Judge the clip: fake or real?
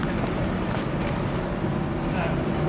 real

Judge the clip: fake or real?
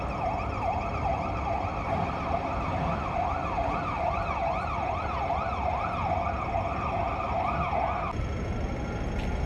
real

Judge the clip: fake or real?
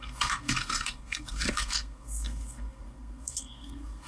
fake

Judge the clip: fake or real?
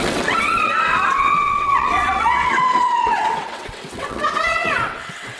fake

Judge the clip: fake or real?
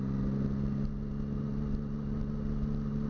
real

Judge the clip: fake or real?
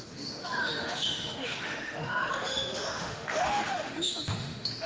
fake